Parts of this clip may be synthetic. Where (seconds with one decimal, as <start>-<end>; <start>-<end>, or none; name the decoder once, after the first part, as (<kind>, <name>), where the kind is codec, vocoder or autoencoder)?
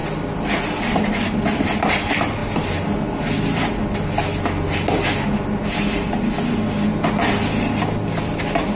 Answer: none